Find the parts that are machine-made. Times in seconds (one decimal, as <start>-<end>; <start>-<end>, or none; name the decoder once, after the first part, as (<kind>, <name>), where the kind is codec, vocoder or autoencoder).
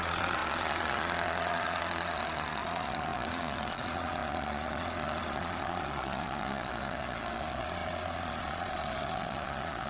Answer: 0.0-9.9 (vocoder, Vocos)